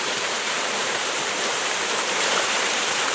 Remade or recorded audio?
remade